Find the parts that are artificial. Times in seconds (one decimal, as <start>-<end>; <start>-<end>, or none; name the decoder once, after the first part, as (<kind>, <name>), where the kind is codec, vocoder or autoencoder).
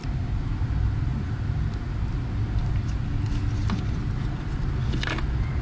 none